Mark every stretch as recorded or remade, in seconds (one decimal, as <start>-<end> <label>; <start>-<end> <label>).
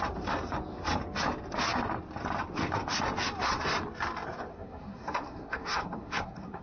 0.0-4.5 recorded; 4.5-6.6 remade